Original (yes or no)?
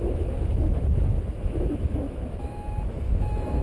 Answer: no